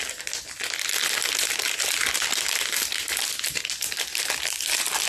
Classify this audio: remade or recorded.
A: recorded